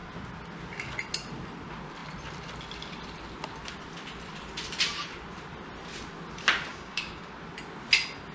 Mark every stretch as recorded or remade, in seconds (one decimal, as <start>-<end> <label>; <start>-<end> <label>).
0.0-6.7 recorded; 6.7-7.3 remade; 7.3-8.3 recorded